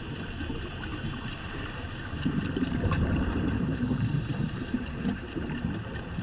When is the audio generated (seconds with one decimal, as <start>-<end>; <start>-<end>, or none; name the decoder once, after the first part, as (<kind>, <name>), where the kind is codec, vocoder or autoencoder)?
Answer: 0.0-6.2 (vocoder, BigVGAN v2)